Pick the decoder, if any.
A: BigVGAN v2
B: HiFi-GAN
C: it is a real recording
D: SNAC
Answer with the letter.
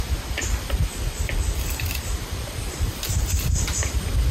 A